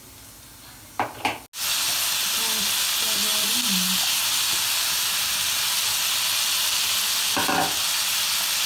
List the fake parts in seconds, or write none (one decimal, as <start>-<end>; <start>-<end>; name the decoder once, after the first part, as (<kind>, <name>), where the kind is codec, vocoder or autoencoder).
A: none